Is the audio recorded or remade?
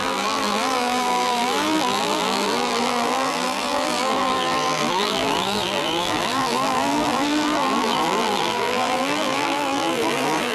remade